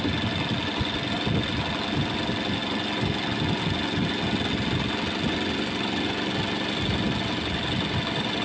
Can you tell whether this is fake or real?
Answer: real